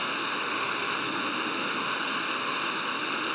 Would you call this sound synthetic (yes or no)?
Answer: yes